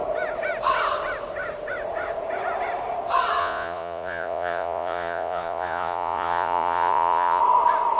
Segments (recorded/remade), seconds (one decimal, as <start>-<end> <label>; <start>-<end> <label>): 0.0-3.4 recorded; 3.4-7.4 remade; 7.4-8.0 recorded